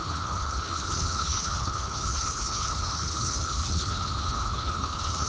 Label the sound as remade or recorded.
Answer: remade